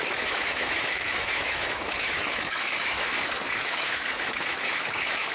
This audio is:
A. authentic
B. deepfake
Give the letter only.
B